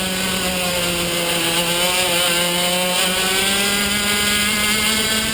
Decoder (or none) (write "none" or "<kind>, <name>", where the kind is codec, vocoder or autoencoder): none